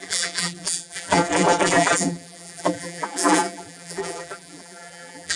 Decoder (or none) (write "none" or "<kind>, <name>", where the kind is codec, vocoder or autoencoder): vocoder, BigVGAN v2